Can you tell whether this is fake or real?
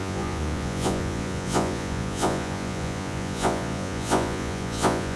fake